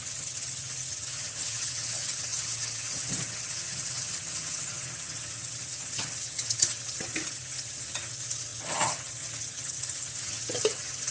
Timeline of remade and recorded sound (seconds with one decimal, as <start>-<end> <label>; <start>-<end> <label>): 0.0-11.1 remade